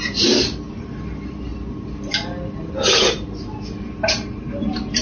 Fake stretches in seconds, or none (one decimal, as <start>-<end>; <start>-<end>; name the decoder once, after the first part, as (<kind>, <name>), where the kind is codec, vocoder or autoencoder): 0.0-5.0 (vocoder, BigVGAN v2)